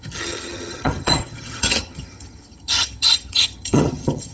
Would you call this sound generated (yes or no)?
yes